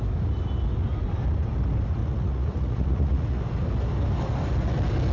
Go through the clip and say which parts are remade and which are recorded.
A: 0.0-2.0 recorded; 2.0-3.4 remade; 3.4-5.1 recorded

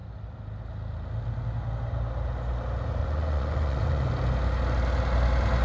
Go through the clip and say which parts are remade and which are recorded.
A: 0.0-3.0 recorded; 3.0-4.1 remade; 4.1-5.6 recorded

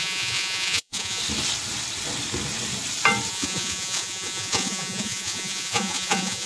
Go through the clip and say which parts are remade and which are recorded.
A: 0.0-1.2 remade; 1.2-3.3 recorded; 3.3-6.5 remade

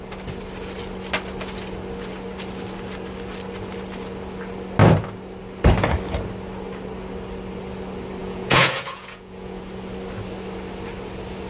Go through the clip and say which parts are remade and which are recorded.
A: 0.0-8.2 recorded; 8.2-9.6 remade; 9.6-11.5 recorded

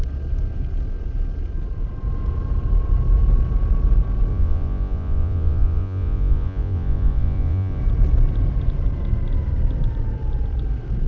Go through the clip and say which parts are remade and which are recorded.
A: 0.0-4.3 recorded; 4.3-7.8 remade; 7.8-11.1 recorded

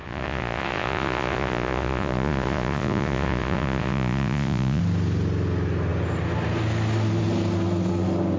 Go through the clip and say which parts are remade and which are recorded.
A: 0.0-4.8 remade; 4.8-8.4 recorded